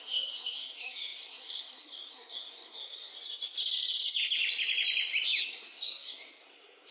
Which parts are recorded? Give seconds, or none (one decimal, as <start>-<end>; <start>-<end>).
3.1-5.4

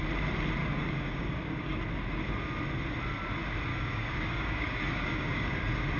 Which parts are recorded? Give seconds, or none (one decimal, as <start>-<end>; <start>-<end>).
0.0-0.6; 1.8-3.7; 5.6-6.0